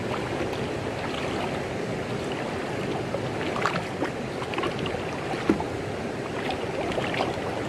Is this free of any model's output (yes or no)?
yes